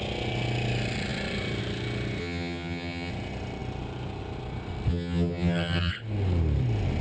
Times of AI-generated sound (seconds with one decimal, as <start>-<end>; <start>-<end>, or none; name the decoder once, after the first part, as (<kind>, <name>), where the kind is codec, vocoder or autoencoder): 2.2-3.1 (vocoder, HiFi-GAN); 4.9-5.9